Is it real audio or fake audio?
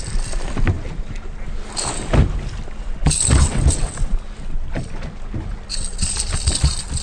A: real